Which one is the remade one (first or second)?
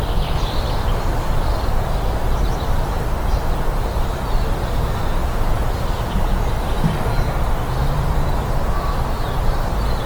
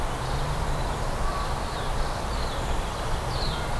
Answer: second